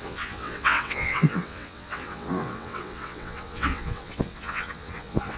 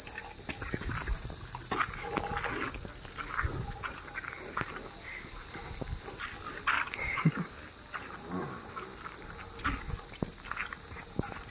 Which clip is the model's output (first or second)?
first